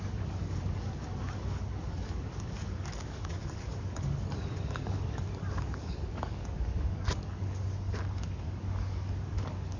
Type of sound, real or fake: fake